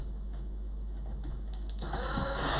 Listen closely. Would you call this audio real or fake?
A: fake